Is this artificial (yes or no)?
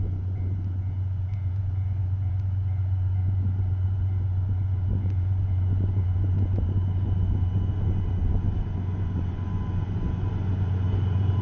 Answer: yes